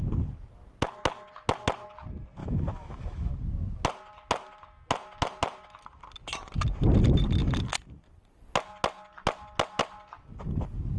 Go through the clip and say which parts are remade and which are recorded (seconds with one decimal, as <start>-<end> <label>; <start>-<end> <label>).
0.0-2.4 recorded; 2.4-3.3 remade; 3.3-11.0 recorded